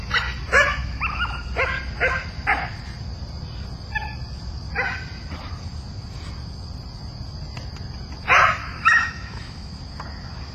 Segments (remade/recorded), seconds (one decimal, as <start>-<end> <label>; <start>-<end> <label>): 0.0-0.8 recorded; 0.8-1.3 remade; 1.3-8.6 recorded; 8.6-9.7 remade; 9.7-10.5 recorded